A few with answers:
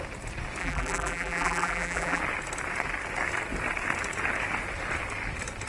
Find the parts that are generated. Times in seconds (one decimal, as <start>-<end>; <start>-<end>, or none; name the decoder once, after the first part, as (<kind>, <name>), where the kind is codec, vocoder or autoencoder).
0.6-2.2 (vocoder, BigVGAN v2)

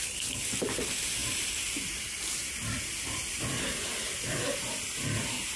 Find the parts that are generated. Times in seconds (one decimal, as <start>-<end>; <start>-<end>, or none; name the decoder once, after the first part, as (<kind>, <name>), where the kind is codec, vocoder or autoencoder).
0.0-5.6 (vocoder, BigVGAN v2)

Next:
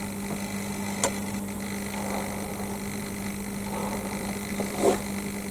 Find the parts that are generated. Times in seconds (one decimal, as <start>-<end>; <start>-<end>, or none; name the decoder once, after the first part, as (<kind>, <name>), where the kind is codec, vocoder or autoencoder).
3.8-4.5 (vocoder, BigVGAN v2)